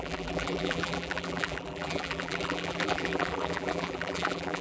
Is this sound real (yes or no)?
no